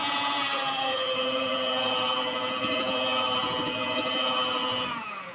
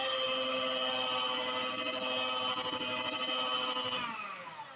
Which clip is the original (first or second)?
second